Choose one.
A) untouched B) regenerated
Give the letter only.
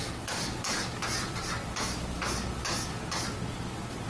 A